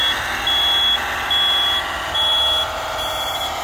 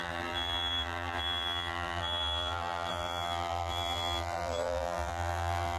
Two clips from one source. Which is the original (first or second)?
first